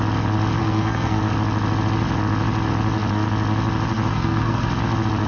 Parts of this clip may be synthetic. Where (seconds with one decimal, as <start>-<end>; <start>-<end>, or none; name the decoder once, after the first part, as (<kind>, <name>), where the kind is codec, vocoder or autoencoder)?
0.6-1.2 (codec, SNAC); 4.1-4.7